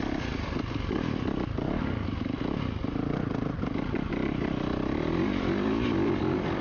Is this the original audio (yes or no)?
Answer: no